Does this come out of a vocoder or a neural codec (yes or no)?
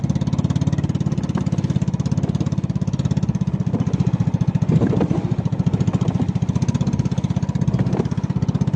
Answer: no